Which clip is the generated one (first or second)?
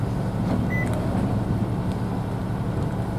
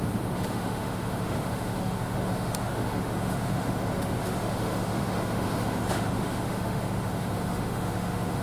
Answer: second